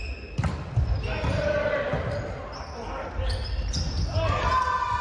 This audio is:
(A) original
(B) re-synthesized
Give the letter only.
A